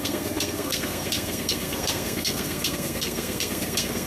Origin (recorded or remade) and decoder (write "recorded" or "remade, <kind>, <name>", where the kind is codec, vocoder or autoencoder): remade, codec, SNAC